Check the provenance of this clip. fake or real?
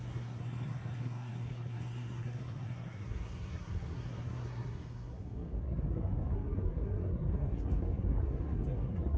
fake